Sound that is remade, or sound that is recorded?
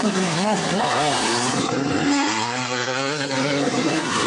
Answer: remade